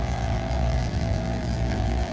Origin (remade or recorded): remade